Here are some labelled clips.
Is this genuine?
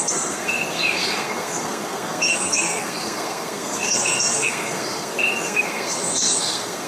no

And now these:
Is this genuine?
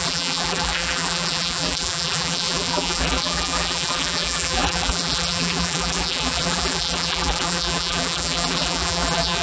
no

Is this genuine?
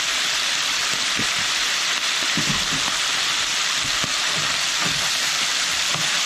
no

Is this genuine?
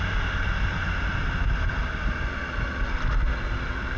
yes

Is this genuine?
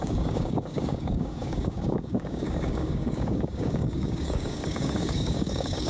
no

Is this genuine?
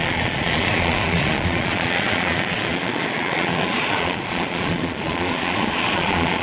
no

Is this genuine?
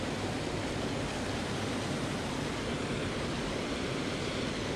yes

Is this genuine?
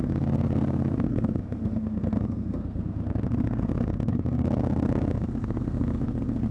no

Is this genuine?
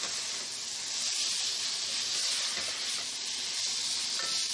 yes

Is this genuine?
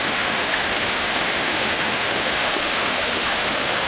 no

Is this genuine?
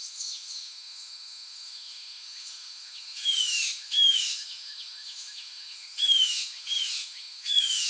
no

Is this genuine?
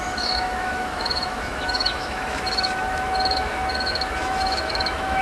no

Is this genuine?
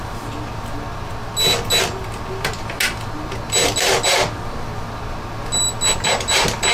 yes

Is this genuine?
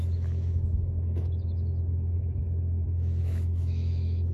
no